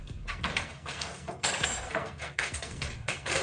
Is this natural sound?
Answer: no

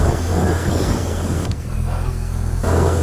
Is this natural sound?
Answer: no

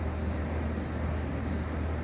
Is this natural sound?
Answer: yes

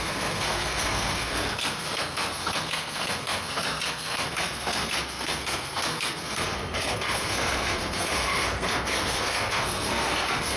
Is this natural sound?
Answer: no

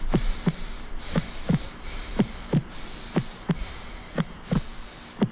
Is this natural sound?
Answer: yes